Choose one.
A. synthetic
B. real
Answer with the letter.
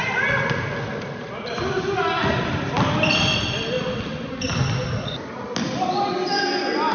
B